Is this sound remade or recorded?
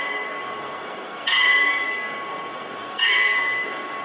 remade